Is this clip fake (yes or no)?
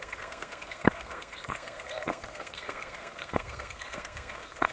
yes